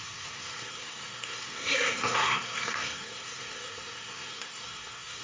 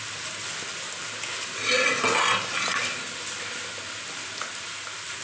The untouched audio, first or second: second